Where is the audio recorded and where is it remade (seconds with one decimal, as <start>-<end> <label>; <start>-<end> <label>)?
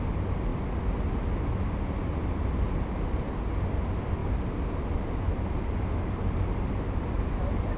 0.0-4.2 recorded; 4.2-6.5 remade; 6.5-7.8 recorded